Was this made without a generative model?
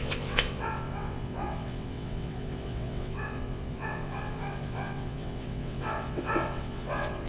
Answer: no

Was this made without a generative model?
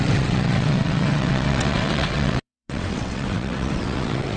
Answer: no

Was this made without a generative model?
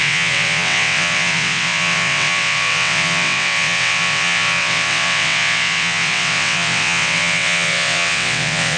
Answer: no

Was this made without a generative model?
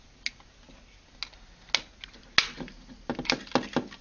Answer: yes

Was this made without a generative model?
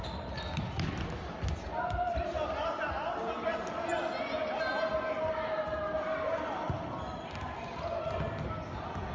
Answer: yes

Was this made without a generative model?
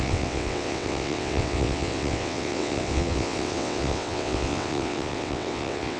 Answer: no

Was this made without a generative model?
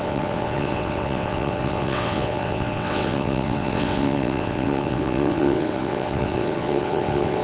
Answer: no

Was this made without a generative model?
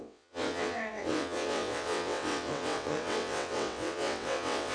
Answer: no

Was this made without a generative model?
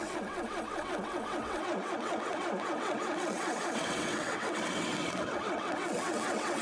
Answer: no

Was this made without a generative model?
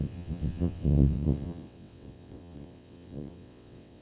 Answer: no